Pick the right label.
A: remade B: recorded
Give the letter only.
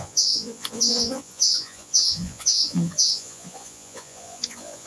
A